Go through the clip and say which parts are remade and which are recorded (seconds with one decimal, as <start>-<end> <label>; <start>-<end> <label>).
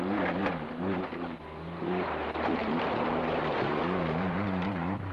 0.0-0.4 remade; 0.4-2.1 recorded; 2.1-5.1 remade